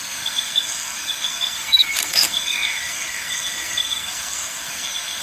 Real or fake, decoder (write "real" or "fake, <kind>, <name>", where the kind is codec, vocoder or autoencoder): fake, codec, SNAC